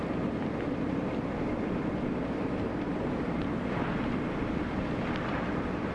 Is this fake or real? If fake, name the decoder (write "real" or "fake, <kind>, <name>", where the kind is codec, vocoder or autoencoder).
fake, vocoder, BigVGAN v2